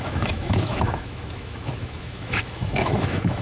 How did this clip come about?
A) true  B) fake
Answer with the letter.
B